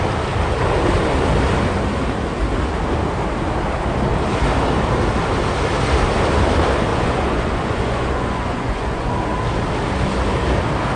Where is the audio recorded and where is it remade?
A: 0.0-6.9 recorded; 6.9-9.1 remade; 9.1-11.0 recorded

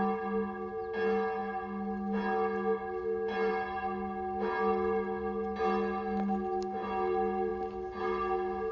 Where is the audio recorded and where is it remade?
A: 0.0-8.7 recorded